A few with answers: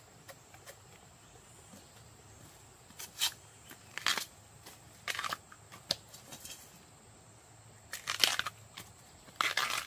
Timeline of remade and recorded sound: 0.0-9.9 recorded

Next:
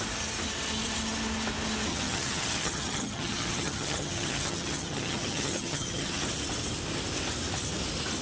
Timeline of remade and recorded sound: 0.0-1.9 recorded; 1.9-6.2 remade; 6.2-8.2 recorded

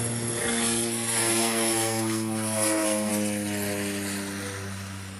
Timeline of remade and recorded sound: 0.0-0.4 recorded; 0.4-3.1 remade; 3.1-5.2 recorded

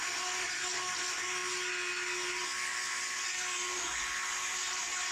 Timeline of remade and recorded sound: 0.0-5.1 recorded

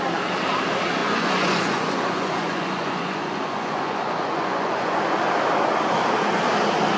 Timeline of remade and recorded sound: 0.0-1.0 recorded; 1.0-5.2 remade; 5.2-7.0 recorded